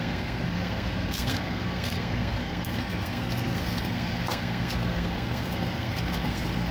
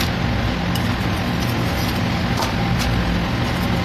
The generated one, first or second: first